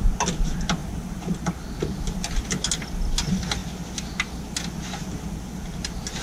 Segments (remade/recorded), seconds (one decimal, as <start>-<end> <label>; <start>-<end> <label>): 0.0-0.8 recorded; 0.8-1.5 remade; 1.5-6.2 recorded